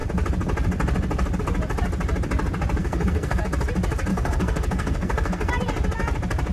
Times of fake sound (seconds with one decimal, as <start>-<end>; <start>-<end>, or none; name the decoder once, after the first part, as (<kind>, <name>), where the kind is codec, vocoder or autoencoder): 2.8-3.4 (codec, SNAC); 4.1-5.5